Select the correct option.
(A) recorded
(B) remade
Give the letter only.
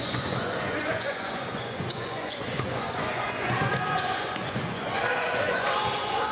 B